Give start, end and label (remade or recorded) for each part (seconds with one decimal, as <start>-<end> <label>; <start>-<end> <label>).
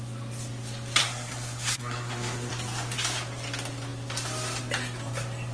0.0-1.0 recorded; 1.0-2.5 remade; 2.5-5.5 recorded